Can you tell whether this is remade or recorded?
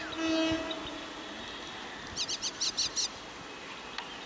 recorded